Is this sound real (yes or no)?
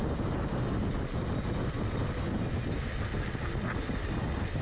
yes